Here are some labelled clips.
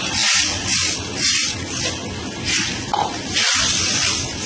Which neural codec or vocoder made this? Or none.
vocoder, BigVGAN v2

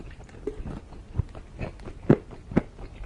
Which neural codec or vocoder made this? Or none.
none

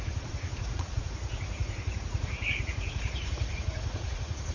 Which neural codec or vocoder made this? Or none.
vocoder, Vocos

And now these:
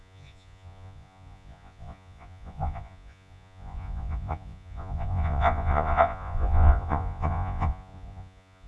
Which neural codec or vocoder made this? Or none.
vocoder, Vocos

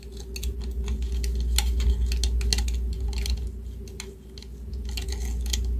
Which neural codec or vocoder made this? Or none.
none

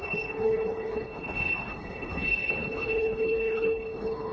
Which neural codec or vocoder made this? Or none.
codec, HILCodec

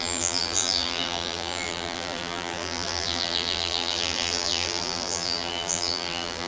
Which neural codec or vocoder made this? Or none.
vocoder, BigVGAN v2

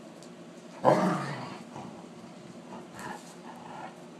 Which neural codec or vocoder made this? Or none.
none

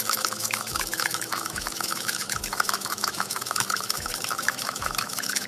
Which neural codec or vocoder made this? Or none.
autoencoder, DAC-VAE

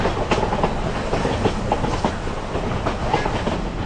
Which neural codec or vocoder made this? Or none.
none